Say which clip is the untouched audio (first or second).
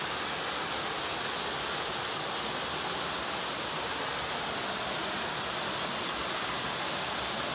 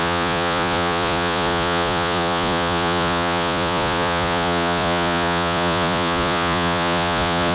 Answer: first